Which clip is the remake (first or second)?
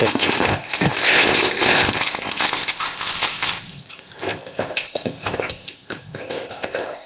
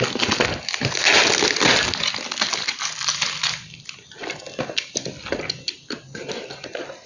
first